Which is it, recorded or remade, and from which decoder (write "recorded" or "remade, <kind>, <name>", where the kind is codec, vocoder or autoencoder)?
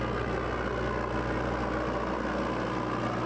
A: recorded